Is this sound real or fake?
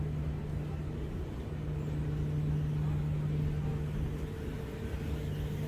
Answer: real